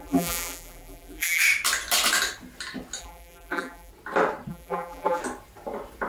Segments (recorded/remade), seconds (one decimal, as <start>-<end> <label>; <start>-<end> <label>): 0.0-1.4 remade; 1.4-3.0 recorded; 3.0-3.9 remade; 3.9-4.5 recorded; 4.5-5.2 remade; 5.2-6.1 recorded

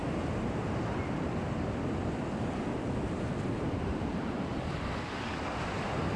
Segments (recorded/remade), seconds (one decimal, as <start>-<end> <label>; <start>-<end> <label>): 0.0-3.7 recorded; 3.7-4.5 remade; 4.5-5.8 recorded; 5.8-6.2 remade

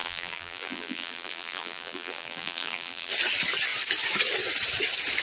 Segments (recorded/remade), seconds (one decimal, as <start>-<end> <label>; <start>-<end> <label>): 0.0-3.1 remade; 3.1-5.2 recorded

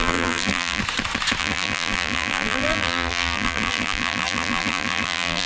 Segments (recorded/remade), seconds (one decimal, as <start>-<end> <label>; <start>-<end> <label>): 0.0-0.8 remade; 0.8-1.4 recorded; 1.4-5.5 remade

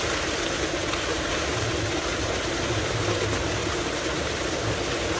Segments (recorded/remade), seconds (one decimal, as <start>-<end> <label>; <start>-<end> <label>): 0.0-1.1 recorded; 1.1-1.8 remade; 1.8-3.6 recorded; 3.6-4.3 remade; 4.3-5.2 recorded

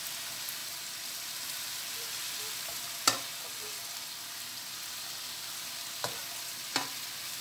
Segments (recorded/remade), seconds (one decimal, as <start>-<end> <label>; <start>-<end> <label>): 0.0-0.6 recorded; 0.6-5.0 remade; 5.0-7.4 recorded

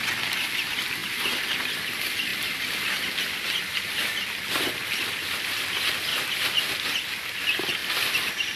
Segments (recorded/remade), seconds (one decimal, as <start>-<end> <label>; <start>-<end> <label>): 0.0-8.6 recorded